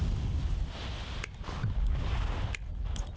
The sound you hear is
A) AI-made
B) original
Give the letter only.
B